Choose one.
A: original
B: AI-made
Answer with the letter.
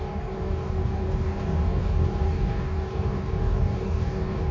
B